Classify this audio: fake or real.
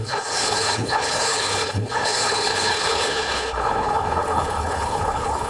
fake